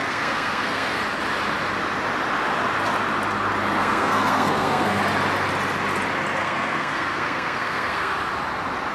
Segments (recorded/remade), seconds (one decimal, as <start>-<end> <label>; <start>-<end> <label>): 0.0-1.0 remade; 1.0-3.8 recorded; 3.8-5.0 remade; 5.0-6.4 recorded; 6.4-8.1 remade; 8.1-8.9 recorded